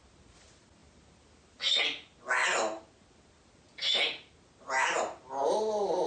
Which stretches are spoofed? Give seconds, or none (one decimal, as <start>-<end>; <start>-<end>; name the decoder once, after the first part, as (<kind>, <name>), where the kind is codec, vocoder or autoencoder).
none